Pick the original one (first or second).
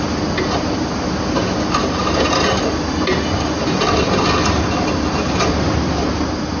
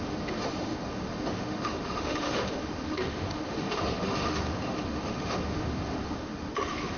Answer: first